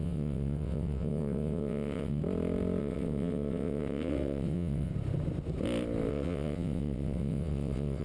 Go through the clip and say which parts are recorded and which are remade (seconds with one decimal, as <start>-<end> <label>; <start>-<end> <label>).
0.0-2.2 remade; 2.2-2.8 recorded; 2.8-4.9 remade; 4.9-6.1 recorded; 6.1-8.0 remade